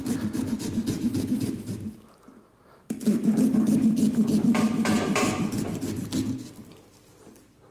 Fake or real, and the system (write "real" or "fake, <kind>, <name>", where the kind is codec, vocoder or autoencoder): real